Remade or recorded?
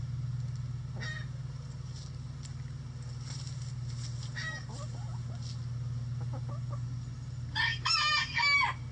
recorded